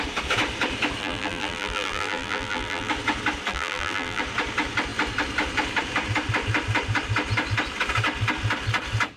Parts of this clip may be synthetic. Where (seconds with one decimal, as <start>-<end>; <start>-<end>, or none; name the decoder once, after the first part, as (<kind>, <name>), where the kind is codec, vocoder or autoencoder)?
1.0-2.9 (vocoder, BigVGAN v2); 3.5-4.2